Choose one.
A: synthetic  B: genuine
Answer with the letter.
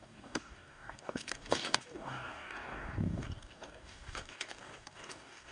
A